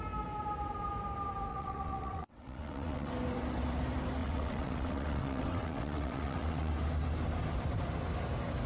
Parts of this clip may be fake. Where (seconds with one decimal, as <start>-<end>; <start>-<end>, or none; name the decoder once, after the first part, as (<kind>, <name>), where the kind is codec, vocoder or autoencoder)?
1.5-3.1 (vocoder, WaveNeXt); 4.2-6.7